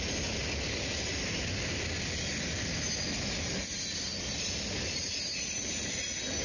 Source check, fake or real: real